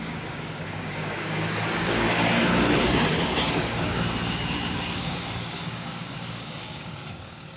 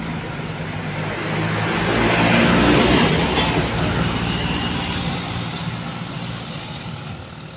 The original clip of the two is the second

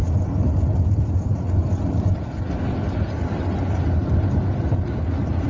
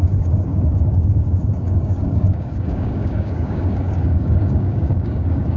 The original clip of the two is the first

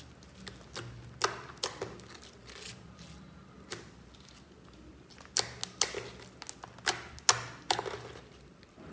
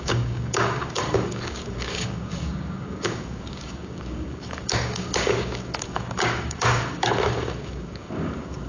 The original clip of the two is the first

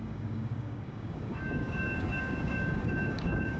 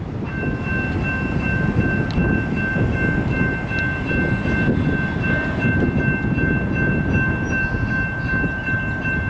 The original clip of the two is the second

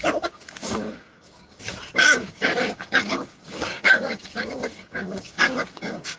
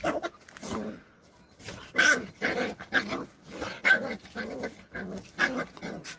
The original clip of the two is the second